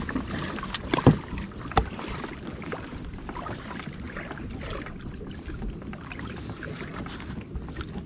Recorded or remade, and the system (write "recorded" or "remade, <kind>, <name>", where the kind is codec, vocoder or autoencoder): recorded